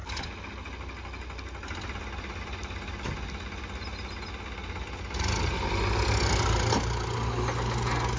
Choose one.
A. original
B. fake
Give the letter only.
A